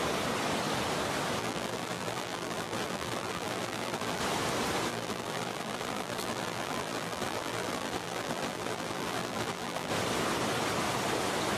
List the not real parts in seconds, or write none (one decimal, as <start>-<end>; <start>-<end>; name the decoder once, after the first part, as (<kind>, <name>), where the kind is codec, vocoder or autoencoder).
1.4-4.2 (vocoder, BigVGAN v2); 4.9-9.9